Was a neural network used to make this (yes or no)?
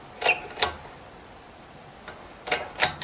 yes